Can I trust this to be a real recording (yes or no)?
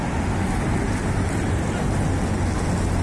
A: yes